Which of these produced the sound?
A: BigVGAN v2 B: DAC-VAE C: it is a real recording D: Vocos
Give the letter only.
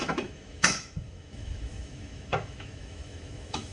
B